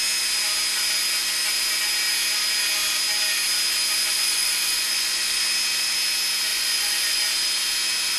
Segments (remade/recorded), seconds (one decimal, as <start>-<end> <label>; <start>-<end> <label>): 0.0-4.0 recorded; 4.0-5.4 remade; 5.4-6.5 recorded; 6.5-7.2 remade; 7.2-8.2 recorded